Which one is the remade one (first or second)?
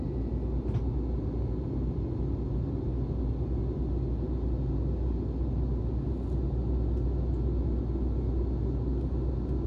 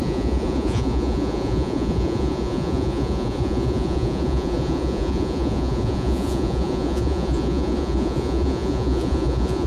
second